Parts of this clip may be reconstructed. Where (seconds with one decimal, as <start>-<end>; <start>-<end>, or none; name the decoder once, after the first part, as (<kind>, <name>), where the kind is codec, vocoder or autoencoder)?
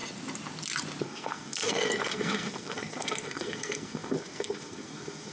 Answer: 1.0-5.3 (codec, SNAC)